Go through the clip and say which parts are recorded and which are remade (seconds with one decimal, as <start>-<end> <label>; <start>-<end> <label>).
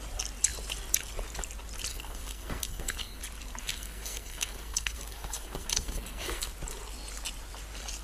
0.0-1.9 recorded; 1.9-3.2 remade; 3.2-3.6 recorded; 3.6-6.5 remade; 6.5-8.0 recorded